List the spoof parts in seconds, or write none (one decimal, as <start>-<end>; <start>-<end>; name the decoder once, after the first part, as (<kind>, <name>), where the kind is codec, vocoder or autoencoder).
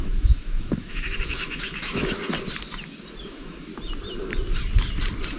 0.0-2.2 (autoencoder, DAC-VAE); 3.2-3.7